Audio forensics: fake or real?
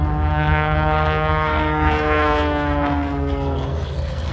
fake